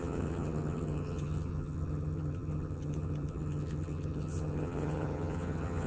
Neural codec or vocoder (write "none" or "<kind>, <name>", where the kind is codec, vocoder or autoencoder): vocoder, HiFi-GAN